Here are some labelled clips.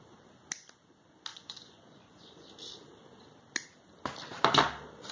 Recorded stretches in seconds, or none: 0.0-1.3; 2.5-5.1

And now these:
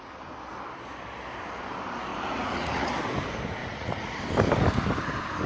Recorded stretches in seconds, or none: 0.0-2.1; 2.9-3.6; 4.2-5.5

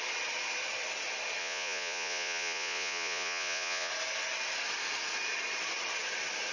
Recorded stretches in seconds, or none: 0.0-1.4; 3.9-6.5

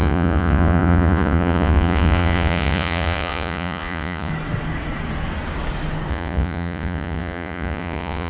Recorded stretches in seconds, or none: 4.3-6.1